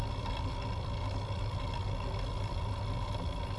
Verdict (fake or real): real